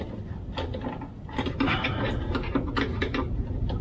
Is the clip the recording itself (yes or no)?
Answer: yes